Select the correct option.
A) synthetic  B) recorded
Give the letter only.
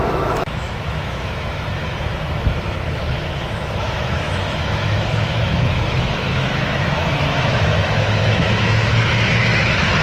A